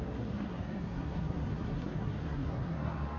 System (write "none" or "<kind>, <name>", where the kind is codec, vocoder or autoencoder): codec, SNAC